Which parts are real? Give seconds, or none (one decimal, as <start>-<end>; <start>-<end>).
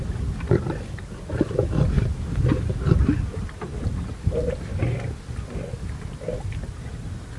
0.0-7.4